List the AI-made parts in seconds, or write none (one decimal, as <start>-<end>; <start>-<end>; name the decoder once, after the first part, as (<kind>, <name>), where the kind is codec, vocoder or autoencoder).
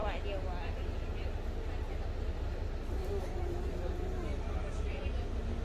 none